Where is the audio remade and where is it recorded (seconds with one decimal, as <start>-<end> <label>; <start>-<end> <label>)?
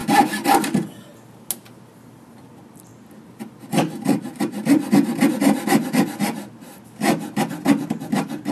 0.0-8.5 recorded